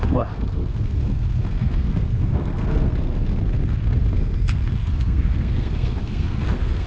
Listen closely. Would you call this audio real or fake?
fake